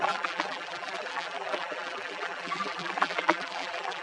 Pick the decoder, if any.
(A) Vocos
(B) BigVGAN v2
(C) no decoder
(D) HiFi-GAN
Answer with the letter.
B